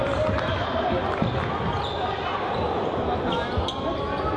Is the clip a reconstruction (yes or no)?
no